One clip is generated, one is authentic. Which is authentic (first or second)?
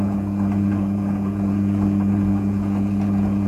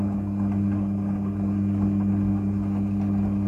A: second